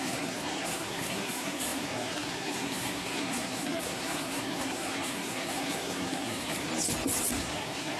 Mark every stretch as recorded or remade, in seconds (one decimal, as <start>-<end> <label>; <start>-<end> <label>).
0.0-6.7 remade; 6.7-7.3 recorded; 7.3-8.0 remade